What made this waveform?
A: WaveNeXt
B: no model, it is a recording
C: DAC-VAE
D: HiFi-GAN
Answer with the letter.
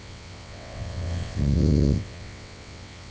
A